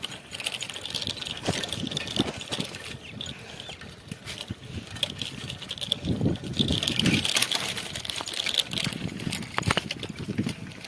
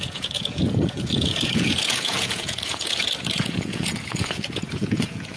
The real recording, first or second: first